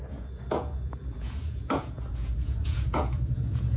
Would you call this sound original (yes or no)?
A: no